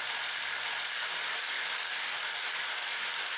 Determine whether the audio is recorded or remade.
recorded